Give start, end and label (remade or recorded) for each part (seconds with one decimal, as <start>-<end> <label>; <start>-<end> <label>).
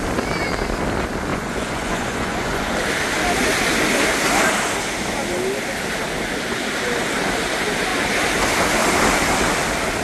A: 0.0-1.3 recorded; 1.3-2.7 remade; 2.7-10.0 recorded